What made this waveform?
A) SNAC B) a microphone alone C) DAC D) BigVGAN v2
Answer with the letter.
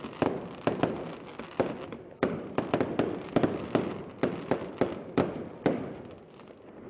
B